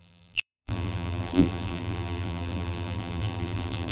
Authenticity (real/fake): fake